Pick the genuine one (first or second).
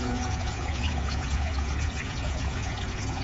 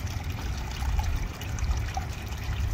second